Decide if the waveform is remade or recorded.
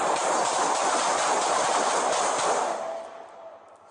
recorded